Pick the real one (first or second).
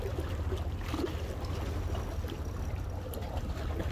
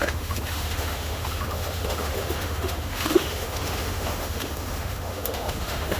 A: first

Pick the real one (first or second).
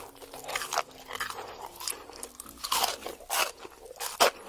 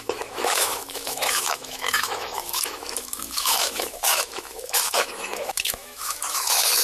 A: first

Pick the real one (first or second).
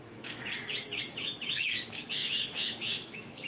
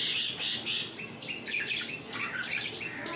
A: second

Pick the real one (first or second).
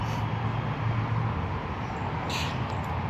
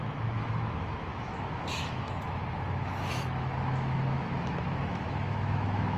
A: first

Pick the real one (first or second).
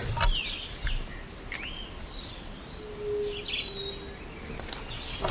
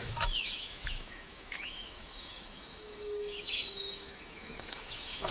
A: first